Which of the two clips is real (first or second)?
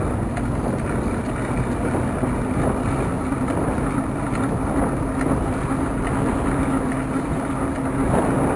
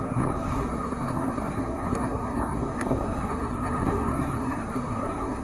first